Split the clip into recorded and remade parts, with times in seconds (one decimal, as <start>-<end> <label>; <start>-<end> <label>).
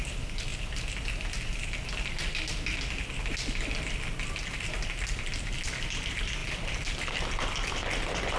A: 0.0-8.4 recorded